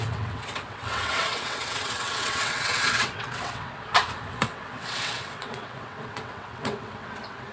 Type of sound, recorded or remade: remade